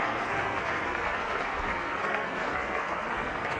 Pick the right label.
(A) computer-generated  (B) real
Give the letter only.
A